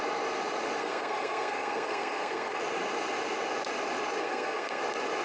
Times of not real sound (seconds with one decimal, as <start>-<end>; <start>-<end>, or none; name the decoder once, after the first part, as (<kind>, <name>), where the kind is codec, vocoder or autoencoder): 0.8-2.6 (codec, SNAC); 4.2-4.8